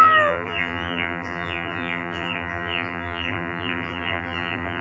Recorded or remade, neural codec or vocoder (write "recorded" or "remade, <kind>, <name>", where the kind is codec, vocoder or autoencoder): remade, vocoder, BigVGAN v2